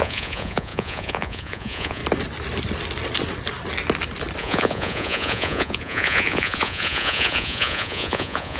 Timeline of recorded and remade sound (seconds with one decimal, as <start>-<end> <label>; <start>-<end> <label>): 0.0-2.0 remade; 2.0-4.4 recorded; 4.4-8.6 remade